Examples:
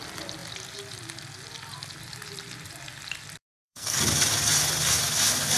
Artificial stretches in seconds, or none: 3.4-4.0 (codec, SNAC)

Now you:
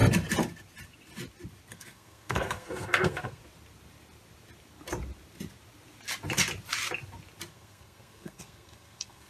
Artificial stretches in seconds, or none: 1.7-3.4 (codec, SNAC); 7.5-9.3

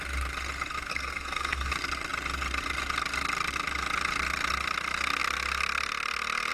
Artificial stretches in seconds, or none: 0.9-1.7 (codec, SNAC)

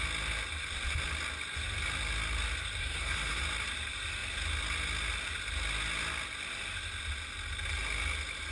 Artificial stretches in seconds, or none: 2.8-3.4 (codec, SNAC)

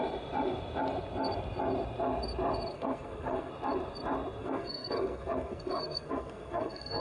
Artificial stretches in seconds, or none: 2.7-3.5 (codec, SNAC); 4.4-7.0